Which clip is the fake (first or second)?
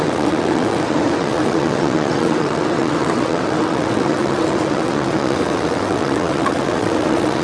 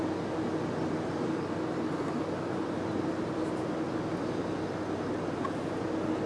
first